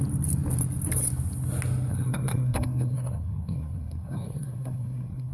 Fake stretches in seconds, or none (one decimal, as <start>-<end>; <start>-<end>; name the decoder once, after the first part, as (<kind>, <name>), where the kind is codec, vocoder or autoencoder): 1.9-5.3 (codec, SNAC)